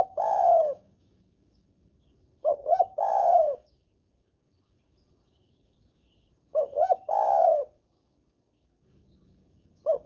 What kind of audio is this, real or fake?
fake